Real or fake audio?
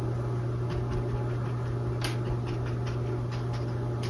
real